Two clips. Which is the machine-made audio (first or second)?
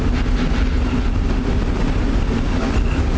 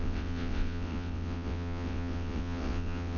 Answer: second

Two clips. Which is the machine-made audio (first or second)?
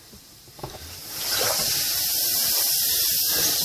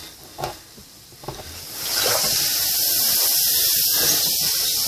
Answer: first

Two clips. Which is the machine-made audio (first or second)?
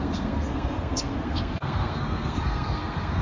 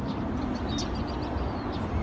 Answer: first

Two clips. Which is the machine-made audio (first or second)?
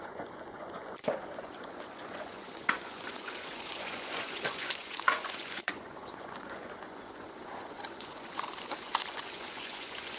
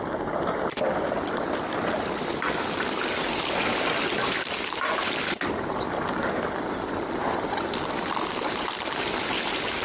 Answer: first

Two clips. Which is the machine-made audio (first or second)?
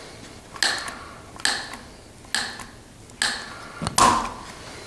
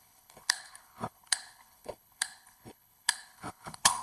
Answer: second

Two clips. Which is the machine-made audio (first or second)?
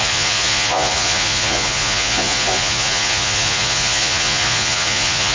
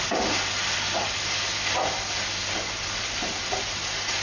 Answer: first